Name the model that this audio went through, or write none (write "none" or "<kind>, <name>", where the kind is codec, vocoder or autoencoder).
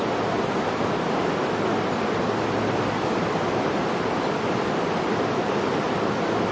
none